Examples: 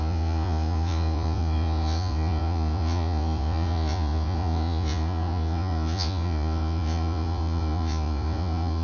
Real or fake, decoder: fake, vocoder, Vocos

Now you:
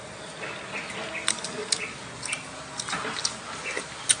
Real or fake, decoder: real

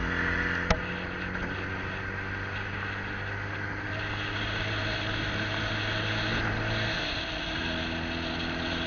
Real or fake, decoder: real